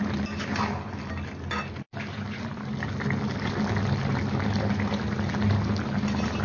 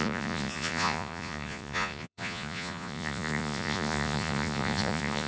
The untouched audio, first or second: first